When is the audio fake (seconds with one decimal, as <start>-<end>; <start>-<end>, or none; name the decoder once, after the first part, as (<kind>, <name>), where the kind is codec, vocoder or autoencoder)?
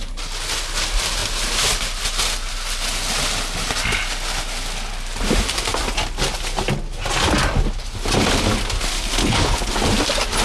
9.2-9.7 (codec, HILCodec)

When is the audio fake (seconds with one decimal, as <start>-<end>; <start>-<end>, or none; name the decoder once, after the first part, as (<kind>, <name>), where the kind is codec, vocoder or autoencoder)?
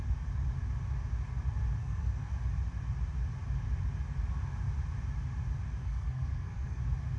1.8-2.3 (codec, SNAC); 5.8-6.8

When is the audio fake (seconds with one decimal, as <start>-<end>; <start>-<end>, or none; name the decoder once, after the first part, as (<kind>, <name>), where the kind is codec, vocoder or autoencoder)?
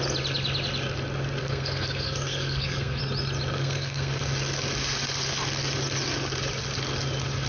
1.4-3.0 (codec, SNAC); 3.5-4.2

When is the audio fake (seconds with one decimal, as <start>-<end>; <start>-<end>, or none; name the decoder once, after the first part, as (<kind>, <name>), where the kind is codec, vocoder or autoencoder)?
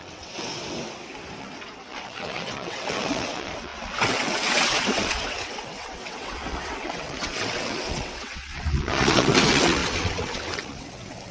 0.0-0.5 (vocoder, WaveNeXt); 1.4-11.3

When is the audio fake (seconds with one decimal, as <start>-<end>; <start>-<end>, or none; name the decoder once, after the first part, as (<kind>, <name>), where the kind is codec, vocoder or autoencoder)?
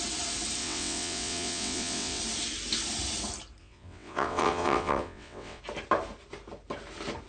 0.6-2.2 (vocoder, WaveNeXt); 3.6-5.6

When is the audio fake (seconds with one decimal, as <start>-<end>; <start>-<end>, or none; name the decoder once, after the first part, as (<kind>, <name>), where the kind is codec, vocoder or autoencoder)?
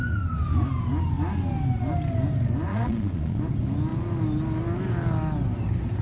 2.7-3.4 (vocoder, Vocos)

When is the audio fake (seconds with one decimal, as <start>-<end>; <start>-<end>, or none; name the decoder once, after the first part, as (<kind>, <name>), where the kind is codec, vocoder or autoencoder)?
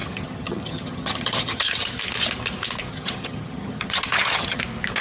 0.0-2.0 (vocoder, HiFi-GAN); 2.9-4.6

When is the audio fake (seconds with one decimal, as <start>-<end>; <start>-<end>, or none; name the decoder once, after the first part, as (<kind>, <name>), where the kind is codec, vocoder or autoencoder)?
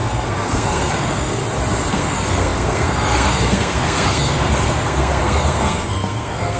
0.0-1.4 (codec, SNAC); 1.9-6.6